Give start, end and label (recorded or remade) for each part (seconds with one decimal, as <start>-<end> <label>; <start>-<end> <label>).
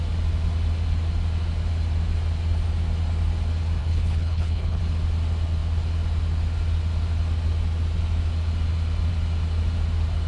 0.0-3.8 recorded; 3.8-4.8 remade; 4.8-10.3 recorded